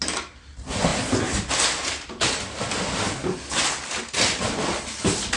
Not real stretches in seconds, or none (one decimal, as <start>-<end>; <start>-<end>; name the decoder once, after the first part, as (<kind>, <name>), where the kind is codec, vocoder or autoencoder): none